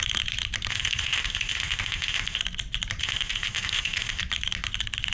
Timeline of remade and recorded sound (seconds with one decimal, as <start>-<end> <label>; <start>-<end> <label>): 0.0-0.7 recorded; 0.7-2.4 remade; 2.4-3.0 recorded; 3.0-4.2 remade; 4.2-5.1 recorded